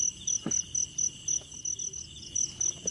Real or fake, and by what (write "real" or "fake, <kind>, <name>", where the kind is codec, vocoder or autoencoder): real